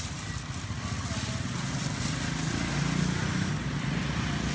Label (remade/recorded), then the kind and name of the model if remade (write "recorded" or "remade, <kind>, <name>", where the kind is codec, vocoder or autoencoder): recorded